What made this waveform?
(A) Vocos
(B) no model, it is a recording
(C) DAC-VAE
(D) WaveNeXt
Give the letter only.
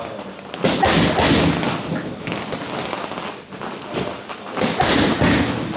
B